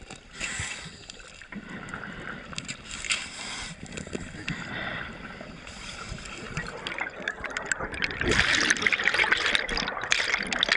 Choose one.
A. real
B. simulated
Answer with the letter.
A